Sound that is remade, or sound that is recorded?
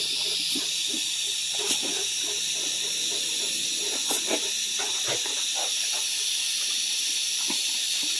recorded